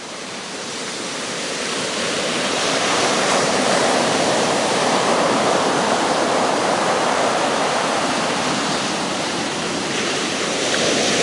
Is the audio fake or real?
fake